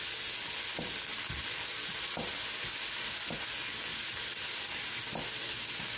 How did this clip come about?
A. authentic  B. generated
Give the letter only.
A